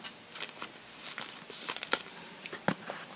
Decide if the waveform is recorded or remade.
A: recorded